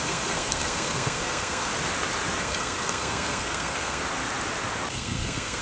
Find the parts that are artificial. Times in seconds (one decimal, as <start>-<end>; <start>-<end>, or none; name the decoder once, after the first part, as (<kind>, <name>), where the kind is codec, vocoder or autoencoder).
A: 0.0-1.7 (codec, SNAC); 2.4-4.0; 4.9-5.6